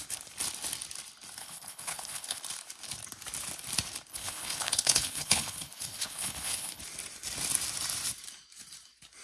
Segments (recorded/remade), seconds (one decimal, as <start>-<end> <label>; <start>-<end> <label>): 0.0-1.4 recorded; 1.4-2.4 remade; 2.4-4.1 recorded; 4.1-6.8 remade; 6.8-9.2 recorded